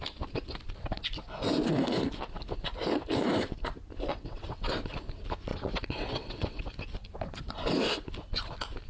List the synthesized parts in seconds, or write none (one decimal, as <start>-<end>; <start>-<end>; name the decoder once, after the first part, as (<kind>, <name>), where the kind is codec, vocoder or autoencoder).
4.1-4.7 (vocoder, WaveNeXt); 5.5-6.6